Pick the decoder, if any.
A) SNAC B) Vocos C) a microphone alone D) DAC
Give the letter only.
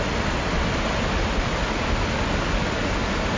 C